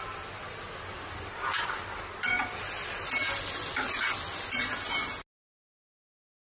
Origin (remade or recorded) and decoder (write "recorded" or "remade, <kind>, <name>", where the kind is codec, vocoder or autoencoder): recorded